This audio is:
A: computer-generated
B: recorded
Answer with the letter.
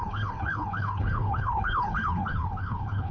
A